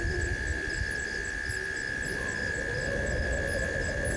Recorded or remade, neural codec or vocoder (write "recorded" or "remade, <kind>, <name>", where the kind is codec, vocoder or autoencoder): recorded